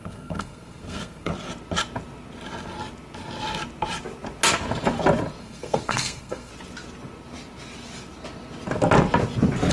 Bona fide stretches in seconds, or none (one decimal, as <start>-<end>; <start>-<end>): 1.3-5.4; 6.5-9.7